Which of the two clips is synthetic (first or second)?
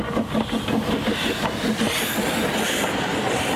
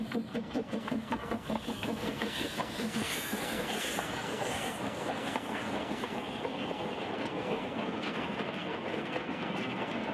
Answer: second